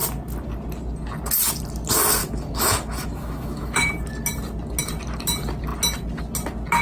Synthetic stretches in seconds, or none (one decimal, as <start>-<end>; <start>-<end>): 2.2-3.9